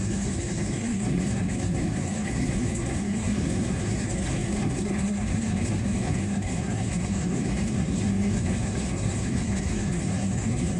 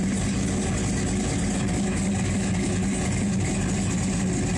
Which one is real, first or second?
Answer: second